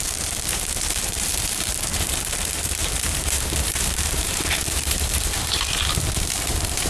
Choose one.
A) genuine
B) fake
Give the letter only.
B